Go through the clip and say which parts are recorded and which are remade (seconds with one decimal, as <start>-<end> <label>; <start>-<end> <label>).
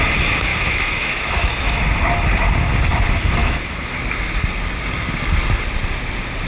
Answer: 0.0-0.5 recorded; 0.5-1.8 remade; 1.8-3.4 recorded; 3.4-4.0 remade; 4.0-6.5 recorded